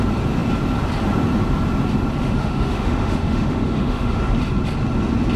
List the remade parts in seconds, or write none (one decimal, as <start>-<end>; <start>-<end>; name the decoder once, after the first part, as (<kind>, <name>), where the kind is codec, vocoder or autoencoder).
2.2-4.2 (autoencoder, DAC-VAE)